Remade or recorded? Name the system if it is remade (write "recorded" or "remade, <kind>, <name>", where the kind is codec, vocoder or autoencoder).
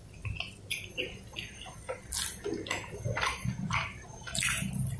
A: recorded